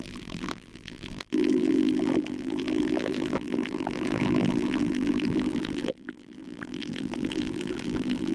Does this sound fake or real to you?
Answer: fake